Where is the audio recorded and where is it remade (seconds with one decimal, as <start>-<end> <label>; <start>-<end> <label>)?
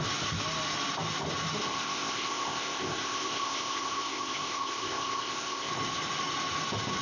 0.0-1.6 recorded; 1.6-5.7 remade; 5.7-7.0 recorded